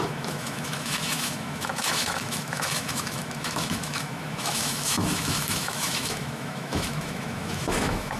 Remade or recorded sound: remade